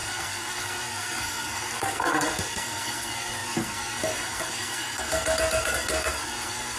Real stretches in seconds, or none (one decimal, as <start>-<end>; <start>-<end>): none

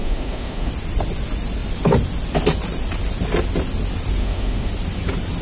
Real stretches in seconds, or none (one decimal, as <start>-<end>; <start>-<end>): 0.7-4.2; 4.7-5.4

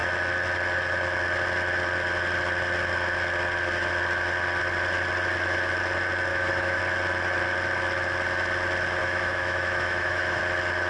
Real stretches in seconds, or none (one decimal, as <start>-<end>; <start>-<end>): 0.0-6.3; 6.8-9.0; 10.4-10.9